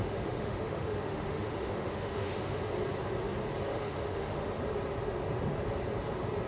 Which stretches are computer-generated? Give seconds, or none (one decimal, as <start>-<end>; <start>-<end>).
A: 0.0-2.6; 3.7-4.5